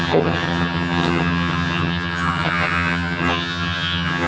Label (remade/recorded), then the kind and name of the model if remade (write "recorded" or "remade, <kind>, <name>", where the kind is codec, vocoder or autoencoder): remade, vocoder, HiFi-GAN